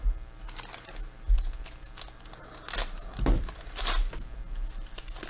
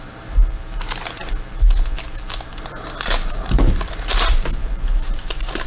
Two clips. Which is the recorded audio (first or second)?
first